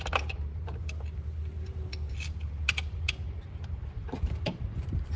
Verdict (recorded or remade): remade